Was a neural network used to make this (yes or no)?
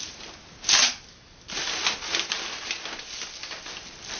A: no